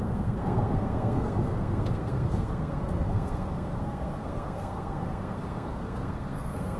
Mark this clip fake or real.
fake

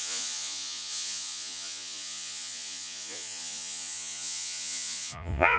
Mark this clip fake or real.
fake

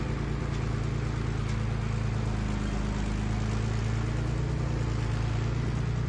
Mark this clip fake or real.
real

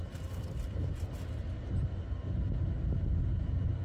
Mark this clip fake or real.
real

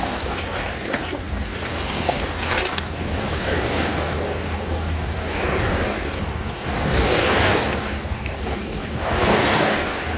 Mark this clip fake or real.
fake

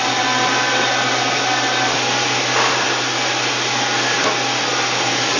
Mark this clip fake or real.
real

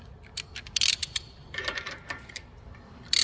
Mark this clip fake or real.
real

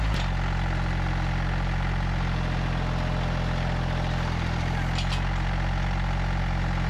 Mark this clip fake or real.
real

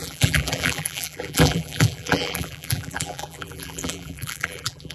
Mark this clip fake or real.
fake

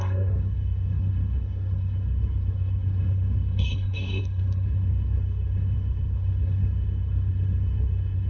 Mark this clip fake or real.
fake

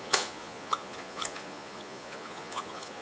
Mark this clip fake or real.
fake